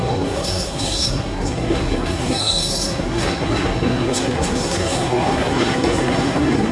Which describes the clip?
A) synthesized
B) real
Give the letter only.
A